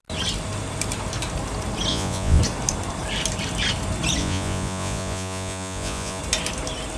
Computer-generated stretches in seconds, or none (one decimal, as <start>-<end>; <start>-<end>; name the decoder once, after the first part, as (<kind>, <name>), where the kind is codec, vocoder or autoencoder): 1.9-2.4 (vocoder, Vocos); 4.2-6.2